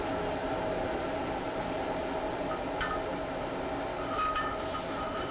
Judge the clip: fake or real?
real